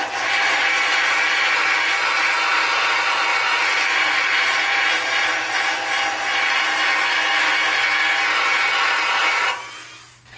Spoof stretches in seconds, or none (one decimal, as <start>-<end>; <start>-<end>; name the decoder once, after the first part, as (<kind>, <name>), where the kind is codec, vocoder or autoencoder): none